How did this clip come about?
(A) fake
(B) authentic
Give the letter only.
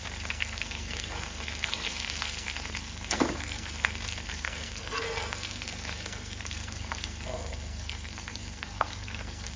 A